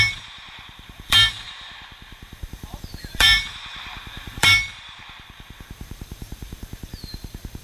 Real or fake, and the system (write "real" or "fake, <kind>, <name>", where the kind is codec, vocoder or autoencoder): fake, vocoder, BigVGAN v2